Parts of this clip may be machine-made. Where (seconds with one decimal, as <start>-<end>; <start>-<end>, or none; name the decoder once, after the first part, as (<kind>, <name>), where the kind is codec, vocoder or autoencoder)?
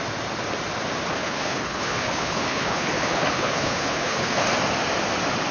1.1-4.4 (codec, HILCodec)